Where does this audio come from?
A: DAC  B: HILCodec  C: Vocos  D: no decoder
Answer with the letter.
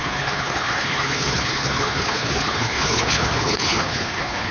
B